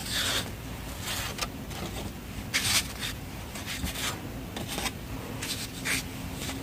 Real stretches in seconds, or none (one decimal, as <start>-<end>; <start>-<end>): 0.0-6.6

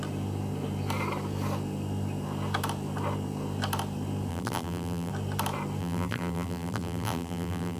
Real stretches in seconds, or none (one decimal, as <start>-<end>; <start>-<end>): 0.0-4.3; 5.1-5.8

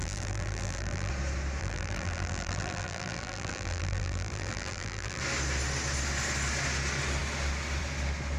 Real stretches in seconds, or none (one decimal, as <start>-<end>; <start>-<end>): 1.1-1.6; 5.2-8.4

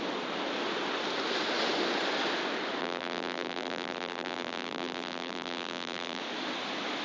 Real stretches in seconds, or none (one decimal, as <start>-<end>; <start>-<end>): 0.0-2.8; 6.2-7.0

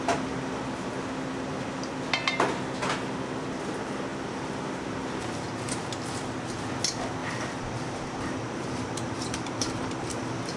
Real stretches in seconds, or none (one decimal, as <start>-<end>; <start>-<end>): 0.0-4.1; 4.6-7.2